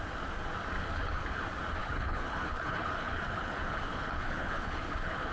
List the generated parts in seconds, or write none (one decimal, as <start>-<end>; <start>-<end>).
0.9-1.4; 1.8-5.3